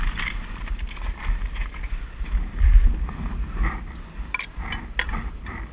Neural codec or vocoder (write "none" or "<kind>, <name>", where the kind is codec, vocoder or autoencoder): none